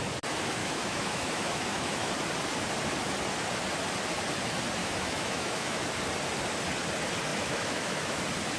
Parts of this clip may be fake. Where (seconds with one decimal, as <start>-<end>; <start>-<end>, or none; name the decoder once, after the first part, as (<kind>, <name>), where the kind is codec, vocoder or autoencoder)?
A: 0.6-2.1 (autoencoder, DAC-VAE); 4.8-5.8; 7.3-8.2